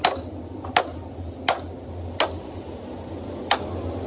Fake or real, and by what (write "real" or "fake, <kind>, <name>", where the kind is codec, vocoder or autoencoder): real